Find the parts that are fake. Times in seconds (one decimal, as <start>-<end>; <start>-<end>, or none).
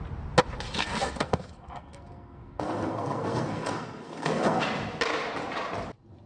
0.8-4.6